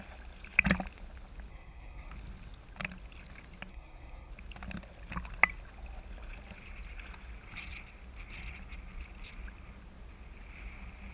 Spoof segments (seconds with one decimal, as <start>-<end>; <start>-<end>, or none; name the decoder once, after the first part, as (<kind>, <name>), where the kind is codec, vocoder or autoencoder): 1.5-2.1 (codec, SNAC); 3.7-4.3